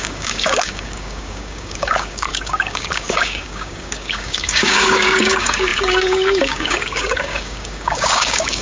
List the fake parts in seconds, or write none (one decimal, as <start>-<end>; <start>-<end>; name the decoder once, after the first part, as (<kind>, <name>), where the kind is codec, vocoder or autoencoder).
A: 0.0-8.6 (codec, DAC)